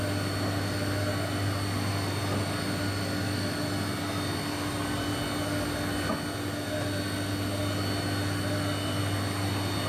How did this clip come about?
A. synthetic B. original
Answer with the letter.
B